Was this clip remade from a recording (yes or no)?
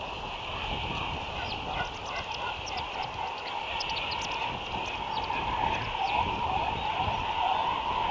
no